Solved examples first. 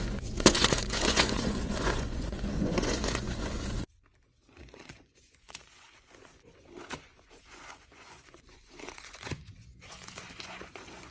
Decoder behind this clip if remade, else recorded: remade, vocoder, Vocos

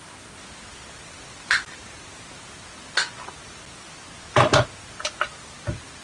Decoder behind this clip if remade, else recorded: recorded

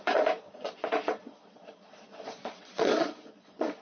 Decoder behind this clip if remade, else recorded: remade, vocoder, Vocos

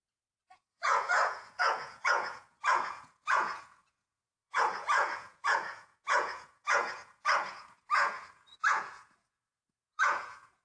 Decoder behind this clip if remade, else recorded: remade, vocoder, Vocos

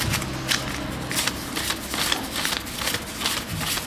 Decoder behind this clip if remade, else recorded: recorded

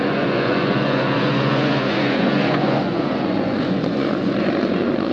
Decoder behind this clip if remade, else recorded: remade, vocoder, Vocos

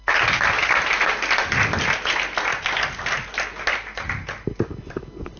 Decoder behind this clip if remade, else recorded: recorded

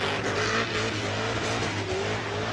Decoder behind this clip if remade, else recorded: recorded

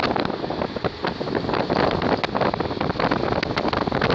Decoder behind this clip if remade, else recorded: recorded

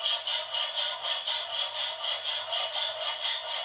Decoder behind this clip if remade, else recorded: recorded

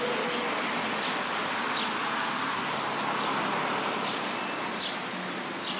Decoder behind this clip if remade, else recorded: recorded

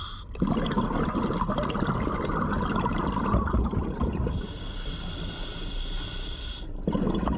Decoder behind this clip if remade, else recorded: recorded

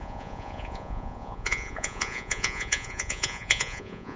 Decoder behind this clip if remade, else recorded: remade, vocoder, Vocos